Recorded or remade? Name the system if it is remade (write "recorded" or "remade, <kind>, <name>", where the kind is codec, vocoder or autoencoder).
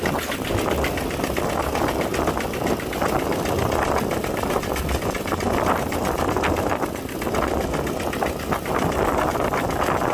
recorded